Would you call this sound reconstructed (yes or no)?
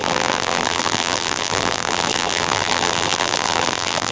yes